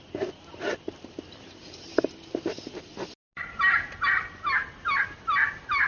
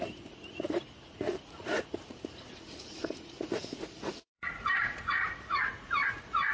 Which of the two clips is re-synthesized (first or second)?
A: second